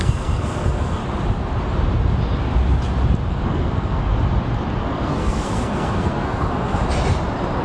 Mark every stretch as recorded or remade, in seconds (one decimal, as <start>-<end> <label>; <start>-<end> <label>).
0.0-1.0 remade; 1.0-3.3 recorded; 3.3-4.1 remade; 4.1-4.8 recorded; 4.8-6.8 remade; 6.8-7.6 recorded